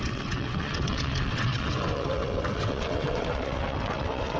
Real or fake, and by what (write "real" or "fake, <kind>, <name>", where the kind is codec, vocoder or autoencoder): fake, vocoder, WaveNeXt